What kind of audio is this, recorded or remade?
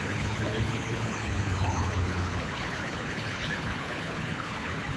remade